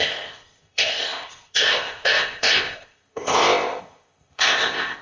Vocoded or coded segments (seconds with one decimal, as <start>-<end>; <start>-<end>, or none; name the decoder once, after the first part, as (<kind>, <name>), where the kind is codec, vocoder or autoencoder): 0.0-5.0 (codec, ZipCodec)